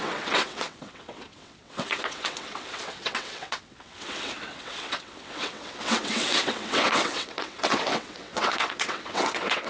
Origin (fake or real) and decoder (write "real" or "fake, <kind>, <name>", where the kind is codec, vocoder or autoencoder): fake, vocoder, WaveNeXt